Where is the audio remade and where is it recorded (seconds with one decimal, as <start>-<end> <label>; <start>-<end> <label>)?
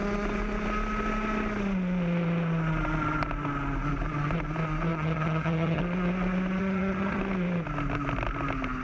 0.0-4.9 recorded; 4.9-5.8 remade; 5.8-6.6 recorded; 6.6-7.2 remade; 7.2-8.8 recorded